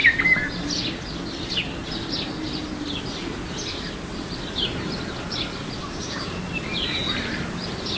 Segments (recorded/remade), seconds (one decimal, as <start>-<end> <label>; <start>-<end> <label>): 0.0-5.8 recorded; 5.8-6.4 remade; 6.4-8.0 recorded